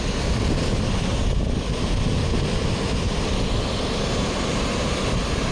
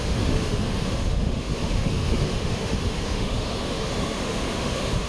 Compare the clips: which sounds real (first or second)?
first